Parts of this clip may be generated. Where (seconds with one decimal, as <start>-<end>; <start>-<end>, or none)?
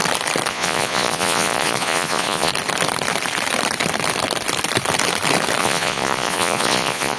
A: 0.5-2.5; 5.6-7.2